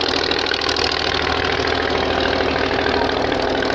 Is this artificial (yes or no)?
no